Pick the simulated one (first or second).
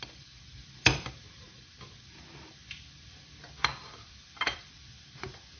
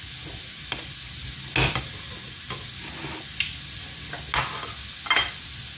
first